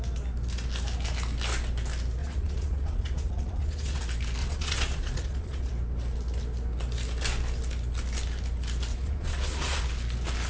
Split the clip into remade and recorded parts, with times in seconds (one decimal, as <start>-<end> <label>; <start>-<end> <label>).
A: 0.0-2.2 recorded; 2.2-4.0 remade; 4.0-4.4 recorded; 4.4-5.7 remade; 5.7-8.9 recorded; 8.9-9.8 remade; 9.8-10.5 recorded